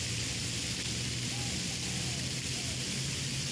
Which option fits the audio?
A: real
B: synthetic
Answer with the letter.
A